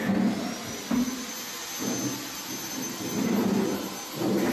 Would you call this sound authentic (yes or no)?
yes